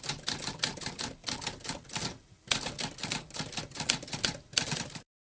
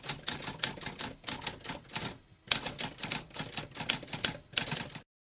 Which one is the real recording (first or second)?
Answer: second